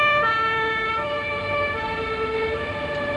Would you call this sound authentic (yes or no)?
yes